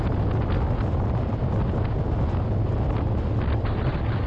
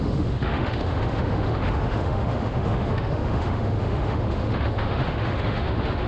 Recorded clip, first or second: first